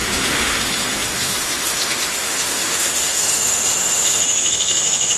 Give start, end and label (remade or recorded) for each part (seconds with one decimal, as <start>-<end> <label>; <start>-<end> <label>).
0.0-5.2 remade